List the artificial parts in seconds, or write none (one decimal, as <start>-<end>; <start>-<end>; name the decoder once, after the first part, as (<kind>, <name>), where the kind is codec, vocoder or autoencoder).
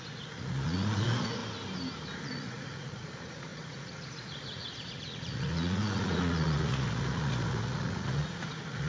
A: 0.0-1.4 (vocoder, Vocos); 2.2-8.9